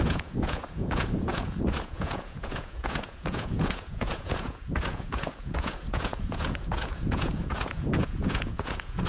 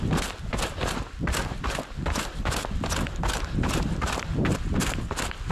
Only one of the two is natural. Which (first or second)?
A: second